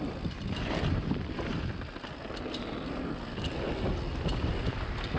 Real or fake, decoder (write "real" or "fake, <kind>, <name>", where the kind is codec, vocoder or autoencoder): real